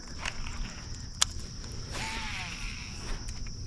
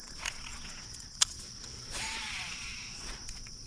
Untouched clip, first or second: first